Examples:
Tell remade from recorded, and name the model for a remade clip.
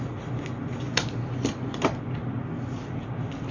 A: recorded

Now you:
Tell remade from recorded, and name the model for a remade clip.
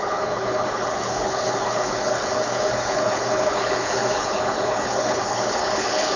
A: remade, codec, HILCodec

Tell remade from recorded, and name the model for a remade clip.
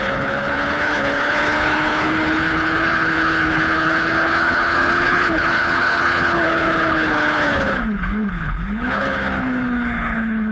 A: remade, codec, HILCodec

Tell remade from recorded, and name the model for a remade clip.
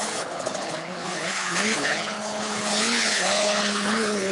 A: remade, codec, HILCodec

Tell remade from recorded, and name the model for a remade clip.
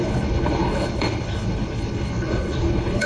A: remade, codec, HILCodec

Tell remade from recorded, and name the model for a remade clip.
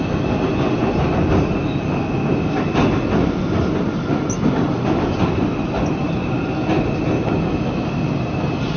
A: recorded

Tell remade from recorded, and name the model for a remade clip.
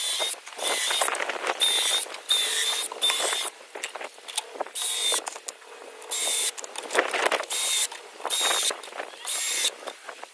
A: recorded